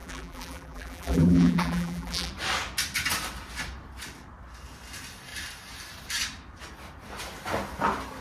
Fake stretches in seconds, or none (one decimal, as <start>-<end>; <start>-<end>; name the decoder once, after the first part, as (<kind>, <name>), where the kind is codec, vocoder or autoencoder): 0.0-2.3 (vocoder, BigVGAN v2)

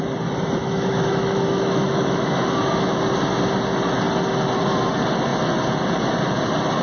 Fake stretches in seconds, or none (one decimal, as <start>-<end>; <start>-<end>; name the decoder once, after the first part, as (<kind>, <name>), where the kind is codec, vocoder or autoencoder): 0.6-3.0 (autoencoder, DAC-VAE)

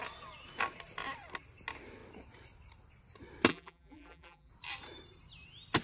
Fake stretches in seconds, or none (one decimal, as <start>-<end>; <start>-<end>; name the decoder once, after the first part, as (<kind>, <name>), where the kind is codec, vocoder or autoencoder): 3.5-4.5 (vocoder, BigVGAN v2)

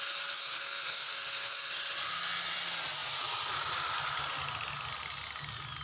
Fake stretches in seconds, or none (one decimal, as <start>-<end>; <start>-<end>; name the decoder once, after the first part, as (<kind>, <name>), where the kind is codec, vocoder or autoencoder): 0.4-1.7 (codec, SNAC)

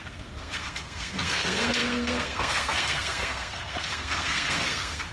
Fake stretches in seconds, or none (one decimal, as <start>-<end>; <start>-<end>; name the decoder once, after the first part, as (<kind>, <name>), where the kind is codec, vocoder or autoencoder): 0.0-5.1 (codec, SNAC)

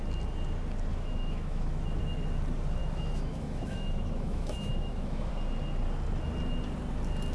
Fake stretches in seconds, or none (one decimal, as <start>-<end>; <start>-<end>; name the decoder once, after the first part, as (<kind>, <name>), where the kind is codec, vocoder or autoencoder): 0.9-2.0 (autoencoder, DAC-VAE); 2.8-5.3

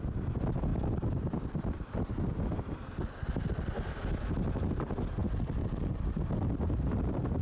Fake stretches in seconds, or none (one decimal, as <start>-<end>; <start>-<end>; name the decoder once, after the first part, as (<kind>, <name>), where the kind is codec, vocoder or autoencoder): 0.7-2.1 (vocoder, BigVGAN v2)

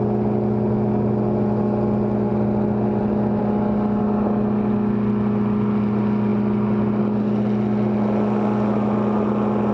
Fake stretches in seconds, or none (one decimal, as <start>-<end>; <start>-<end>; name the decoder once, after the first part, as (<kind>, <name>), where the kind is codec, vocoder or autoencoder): none